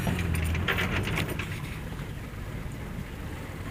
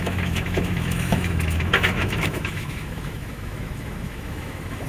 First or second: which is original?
first